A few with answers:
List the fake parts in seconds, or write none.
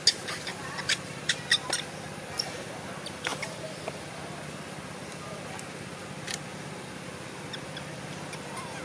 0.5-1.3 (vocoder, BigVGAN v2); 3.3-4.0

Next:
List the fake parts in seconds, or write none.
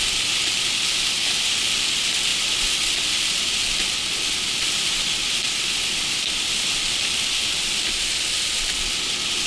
none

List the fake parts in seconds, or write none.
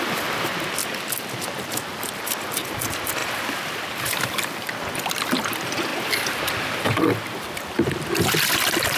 0.0-0.8 (vocoder, BigVGAN v2); 2.2-5.9; 8.2-9.0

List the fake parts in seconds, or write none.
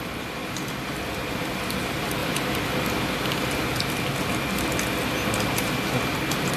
none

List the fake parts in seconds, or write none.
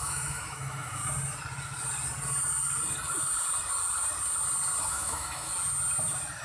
0.0-1.0 (autoencoder, DAC-VAE); 4.8-5.5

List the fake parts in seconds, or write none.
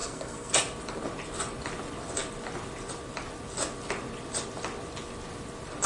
0.0-0.5 (codec, SNAC)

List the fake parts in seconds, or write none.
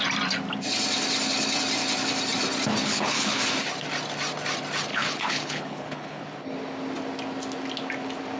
2.8-3.4 (codec, HILCodec); 4.9-6.2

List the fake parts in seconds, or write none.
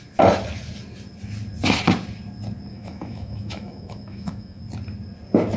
2.7-4.6 (autoencoder, DAC-VAE)